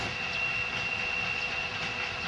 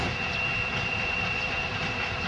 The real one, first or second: first